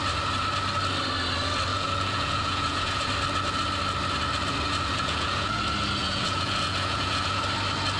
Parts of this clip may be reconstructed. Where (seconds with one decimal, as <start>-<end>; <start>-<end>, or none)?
1.7-3.1; 4.9-5.6; 6.0-7.4